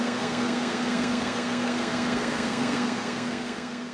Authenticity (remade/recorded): remade